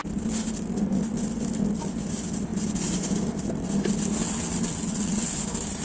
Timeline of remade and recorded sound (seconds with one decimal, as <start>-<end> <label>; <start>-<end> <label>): 0.0-4.2 recorded; 4.2-5.3 remade; 5.3-5.8 recorded